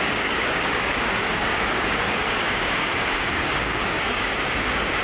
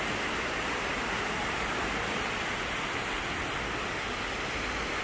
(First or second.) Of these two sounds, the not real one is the first